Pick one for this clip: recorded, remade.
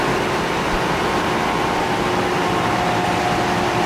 recorded